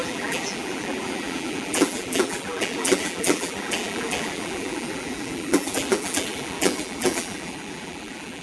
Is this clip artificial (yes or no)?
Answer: yes